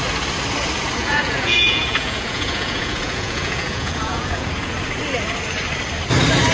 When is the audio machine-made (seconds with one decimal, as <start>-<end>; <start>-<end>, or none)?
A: 1.0-4.5